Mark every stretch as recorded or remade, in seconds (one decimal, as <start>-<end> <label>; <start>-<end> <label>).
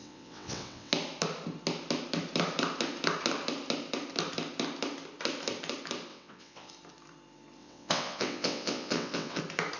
0.0-0.9 remade; 0.9-6.1 recorded; 6.1-6.7 remade; 6.7-7.6 recorded; 7.6-9.4 remade; 9.4-9.8 recorded